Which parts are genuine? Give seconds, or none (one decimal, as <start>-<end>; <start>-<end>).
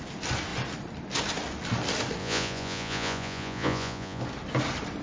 0.0-2.2; 4.2-5.0